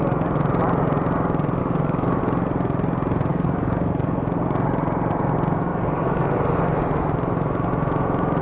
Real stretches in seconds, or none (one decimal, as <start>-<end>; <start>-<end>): 0.0-1.6; 2.2-3.3; 3.9-5.7; 6.3-8.4